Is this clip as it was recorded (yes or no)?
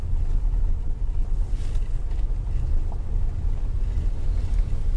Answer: yes